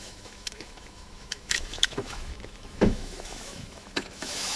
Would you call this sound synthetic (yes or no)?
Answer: yes